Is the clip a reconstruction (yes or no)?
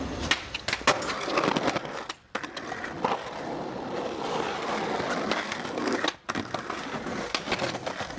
no